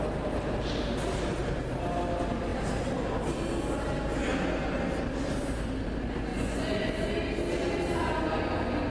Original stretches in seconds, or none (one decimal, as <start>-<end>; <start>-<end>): 0.0-6.3; 7.1-8.9